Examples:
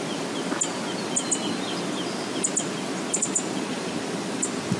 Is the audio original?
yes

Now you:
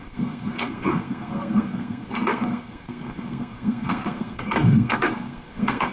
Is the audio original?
no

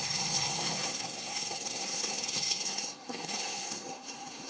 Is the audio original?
no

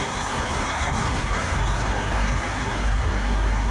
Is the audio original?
no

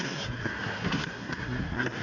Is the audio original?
no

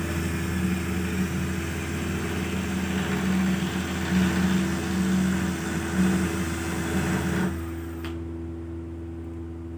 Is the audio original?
yes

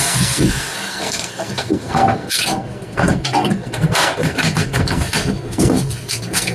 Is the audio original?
no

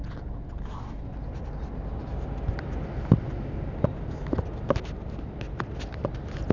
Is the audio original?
yes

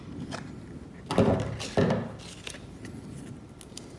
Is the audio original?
yes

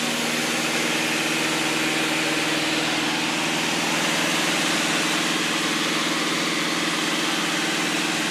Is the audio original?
yes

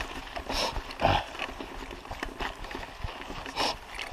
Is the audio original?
yes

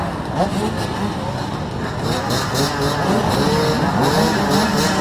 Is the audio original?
yes